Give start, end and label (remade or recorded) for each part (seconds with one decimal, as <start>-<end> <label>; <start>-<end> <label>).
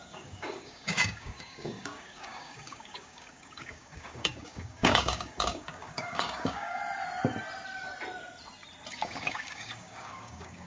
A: 0.0-6.8 remade; 6.8-8.9 recorded; 8.9-10.7 remade